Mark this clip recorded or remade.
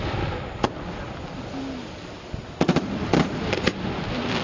recorded